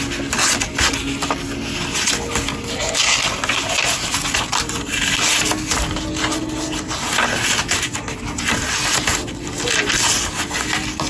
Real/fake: real